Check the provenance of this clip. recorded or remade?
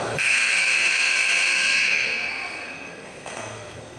remade